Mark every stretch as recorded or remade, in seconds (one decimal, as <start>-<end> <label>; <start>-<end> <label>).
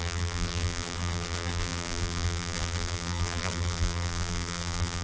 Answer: 0.0-5.0 remade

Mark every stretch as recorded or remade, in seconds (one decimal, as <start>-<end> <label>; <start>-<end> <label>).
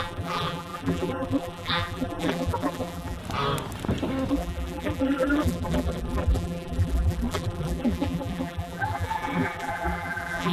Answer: 0.0-3.2 remade; 3.2-4.3 recorded; 4.3-10.5 remade